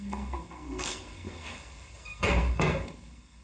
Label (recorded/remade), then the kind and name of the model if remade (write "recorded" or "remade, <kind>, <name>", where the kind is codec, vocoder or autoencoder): remade, codec, SNAC